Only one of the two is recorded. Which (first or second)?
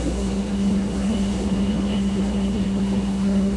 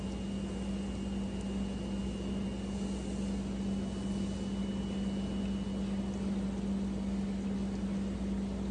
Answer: second